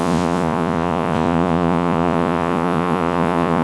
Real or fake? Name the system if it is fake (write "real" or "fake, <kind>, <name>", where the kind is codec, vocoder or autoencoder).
fake, vocoder, Vocos